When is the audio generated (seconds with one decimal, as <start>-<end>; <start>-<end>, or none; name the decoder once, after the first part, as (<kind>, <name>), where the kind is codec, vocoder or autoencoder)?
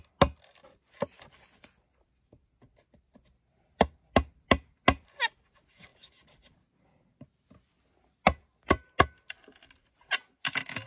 none